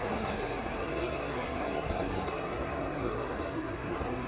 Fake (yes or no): yes